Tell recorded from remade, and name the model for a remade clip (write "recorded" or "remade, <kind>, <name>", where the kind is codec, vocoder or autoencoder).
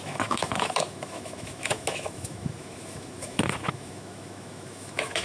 remade, autoencoder, DAC-VAE